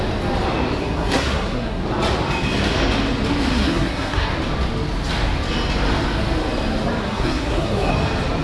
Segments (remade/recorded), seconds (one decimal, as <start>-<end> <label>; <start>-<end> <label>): 0.0-0.8 recorded; 0.8-1.8 remade; 1.8-3.5 recorded; 3.5-4.3 remade; 4.3-7.0 recorded; 7.0-7.9 remade; 7.9-8.4 recorded